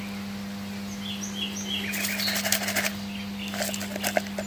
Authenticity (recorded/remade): recorded